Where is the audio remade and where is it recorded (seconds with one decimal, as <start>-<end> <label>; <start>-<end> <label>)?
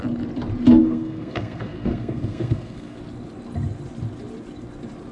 0.0-0.8 recorded; 0.8-3.0 remade; 3.0-5.1 recorded